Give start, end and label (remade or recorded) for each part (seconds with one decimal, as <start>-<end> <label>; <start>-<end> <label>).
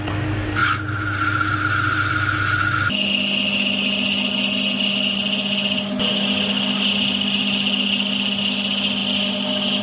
0.0-9.8 recorded